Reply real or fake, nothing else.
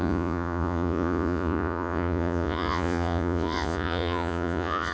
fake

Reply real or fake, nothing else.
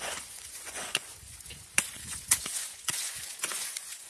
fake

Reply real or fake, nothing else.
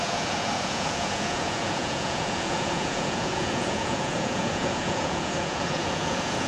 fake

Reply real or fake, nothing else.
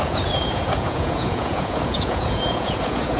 fake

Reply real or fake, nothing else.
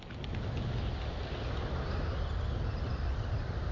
real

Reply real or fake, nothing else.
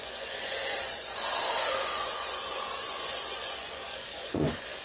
fake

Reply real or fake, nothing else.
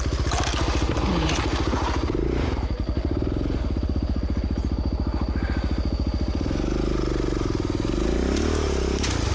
real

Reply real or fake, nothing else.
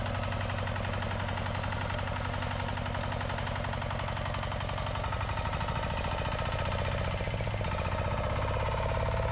real